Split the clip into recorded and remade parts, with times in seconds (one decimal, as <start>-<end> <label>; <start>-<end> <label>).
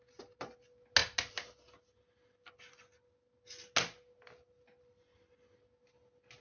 0.0-6.4 recorded